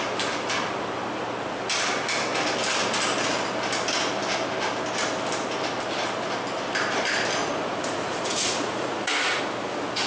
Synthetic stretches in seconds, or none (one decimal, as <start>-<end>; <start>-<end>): 7.4-9.4